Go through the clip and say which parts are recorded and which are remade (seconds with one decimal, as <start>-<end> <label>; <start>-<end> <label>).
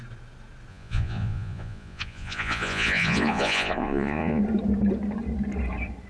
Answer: 0.0-0.7 recorded; 0.7-4.4 remade; 4.4-6.1 recorded